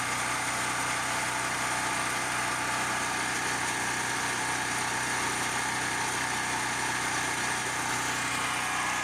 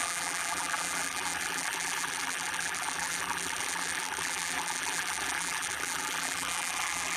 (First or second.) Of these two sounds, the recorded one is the first